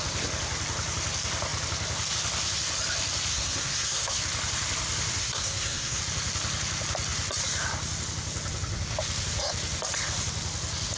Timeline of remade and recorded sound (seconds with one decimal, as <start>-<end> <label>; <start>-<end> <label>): 0.0-3.3 recorded; 3.3-4.2 remade; 4.2-5.2 recorded; 5.2-6.0 remade; 6.0-11.0 recorded